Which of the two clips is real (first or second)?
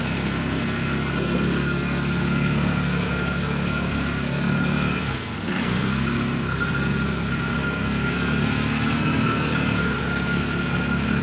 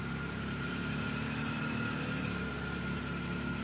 second